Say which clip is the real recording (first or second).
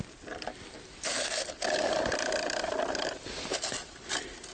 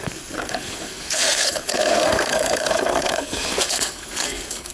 first